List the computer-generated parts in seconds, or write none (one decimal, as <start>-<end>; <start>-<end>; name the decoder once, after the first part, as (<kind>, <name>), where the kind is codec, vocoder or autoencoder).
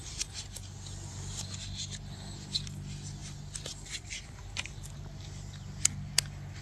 none